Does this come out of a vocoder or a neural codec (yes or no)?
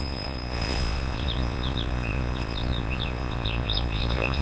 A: yes